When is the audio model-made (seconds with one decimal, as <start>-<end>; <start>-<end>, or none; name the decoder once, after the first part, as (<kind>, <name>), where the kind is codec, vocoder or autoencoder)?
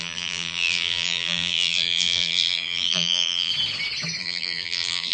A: 0.0-3.5 (vocoder, BigVGAN v2); 4.2-5.1